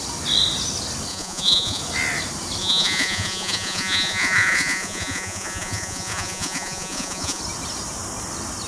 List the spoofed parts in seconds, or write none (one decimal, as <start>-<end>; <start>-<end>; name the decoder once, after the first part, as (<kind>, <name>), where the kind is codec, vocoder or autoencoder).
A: 1.1-1.8 (vocoder, Vocos); 2.6-7.4